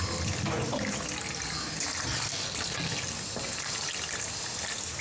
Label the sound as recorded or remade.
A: recorded